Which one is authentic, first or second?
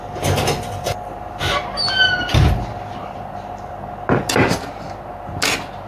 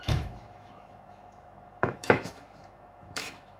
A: first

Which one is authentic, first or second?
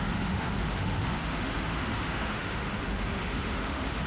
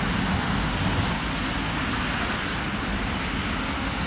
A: second